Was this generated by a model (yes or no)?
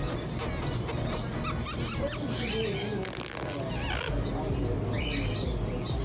no